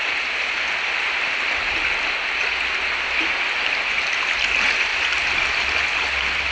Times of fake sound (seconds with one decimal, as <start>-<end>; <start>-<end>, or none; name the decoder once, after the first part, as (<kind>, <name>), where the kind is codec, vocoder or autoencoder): none